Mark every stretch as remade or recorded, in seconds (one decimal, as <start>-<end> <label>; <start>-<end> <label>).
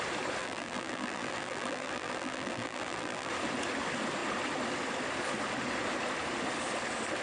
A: 0.0-0.4 recorded; 0.4-3.3 remade; 3.3-7.2 recorded